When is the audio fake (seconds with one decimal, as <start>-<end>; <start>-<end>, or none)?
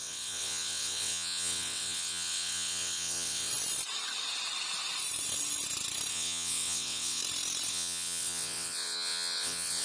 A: 0.0-3.5; 6.1-7.2; 7.7-9.8